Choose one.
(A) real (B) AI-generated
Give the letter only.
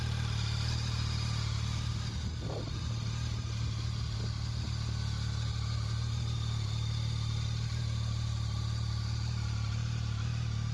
A